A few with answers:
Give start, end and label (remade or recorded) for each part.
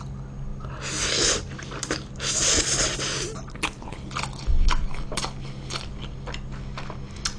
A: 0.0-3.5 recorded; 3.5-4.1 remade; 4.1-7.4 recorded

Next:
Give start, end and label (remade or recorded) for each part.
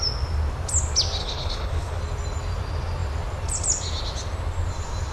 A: 0.0-1.2 recorded; 1.2-2.0 remade; 2.0-5.1 recorded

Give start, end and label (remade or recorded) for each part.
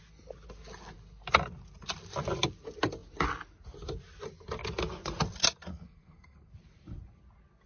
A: 0.0-5.7 recorded; 5.7-6.5 remade; 6.5-7.7 recorded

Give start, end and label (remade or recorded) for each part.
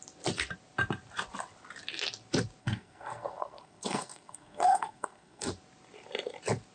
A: 0.0-2.6 recorded; 2.6-5.5 remade; 5.5-6.7 recorded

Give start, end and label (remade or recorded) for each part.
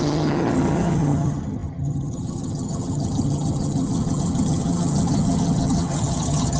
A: 0.0-6.6 remade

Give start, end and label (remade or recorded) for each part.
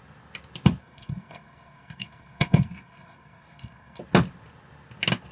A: 0.0-0.8 recorded; 0.8-4.0 remade; 4.0-5.3 recorded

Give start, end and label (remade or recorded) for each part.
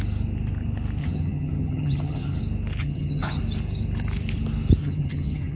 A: 0.0-1.0 recorded; 1.0-2.4 remade; 2.4-2.8 recorded; 2.8-3.4 remade; 3.4-4.8 recorded; 4.8-5.6 remade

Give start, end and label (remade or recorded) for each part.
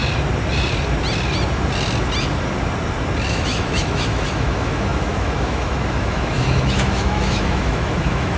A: 0.0-3.3 recorded; 3.3-8.4 remade